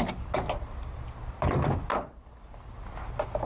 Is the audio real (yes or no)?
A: no